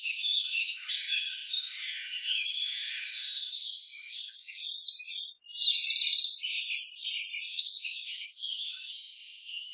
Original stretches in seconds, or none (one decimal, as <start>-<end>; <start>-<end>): 4.6-7.5